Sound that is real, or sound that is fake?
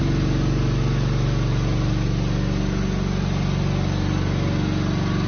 real